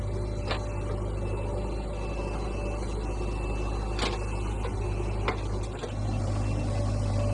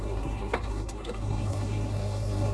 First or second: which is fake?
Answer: second